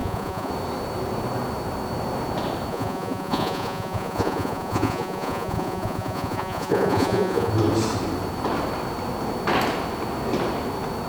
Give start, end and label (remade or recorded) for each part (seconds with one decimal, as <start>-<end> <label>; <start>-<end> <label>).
0.0-0.5 remade; 0.5-2.7 recorded; 2.7-7.5 remade; 7.5-11.1 recorded